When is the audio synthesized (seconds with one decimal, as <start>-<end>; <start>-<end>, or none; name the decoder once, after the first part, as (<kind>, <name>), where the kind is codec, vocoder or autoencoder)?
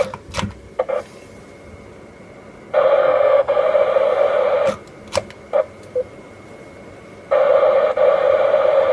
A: 3.0-3.6 (codec, SNAC)